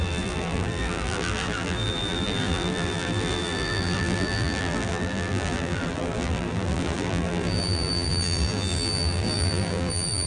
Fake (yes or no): yes